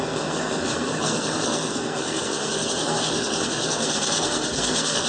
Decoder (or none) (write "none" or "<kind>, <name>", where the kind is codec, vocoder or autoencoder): codec, SNAC